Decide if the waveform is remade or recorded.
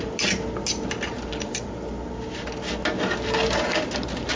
recorded